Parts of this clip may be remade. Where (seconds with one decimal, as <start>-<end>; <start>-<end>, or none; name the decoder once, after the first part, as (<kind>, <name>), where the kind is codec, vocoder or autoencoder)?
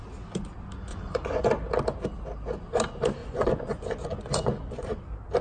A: 0.9-1.5 (vocoder, Vocos); 3.2-5.0